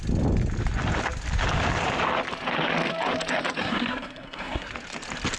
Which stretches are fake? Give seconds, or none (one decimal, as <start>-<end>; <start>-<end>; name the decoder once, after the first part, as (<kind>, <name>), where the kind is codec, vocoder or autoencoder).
3.6-4.7 (codec, SNAC)